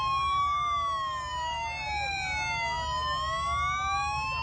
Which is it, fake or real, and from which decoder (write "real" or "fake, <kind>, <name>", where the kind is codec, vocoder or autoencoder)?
real